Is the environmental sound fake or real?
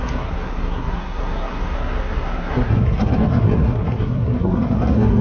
fake